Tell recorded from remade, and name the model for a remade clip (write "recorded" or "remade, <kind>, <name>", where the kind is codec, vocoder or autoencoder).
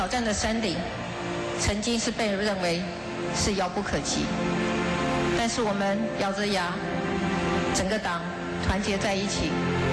recorded